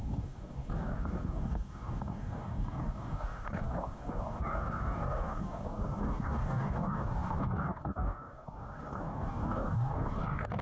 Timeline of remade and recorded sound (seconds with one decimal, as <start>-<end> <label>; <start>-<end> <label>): 0.0-10.6 remade